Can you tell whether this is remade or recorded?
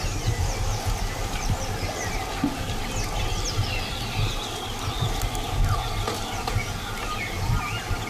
recorded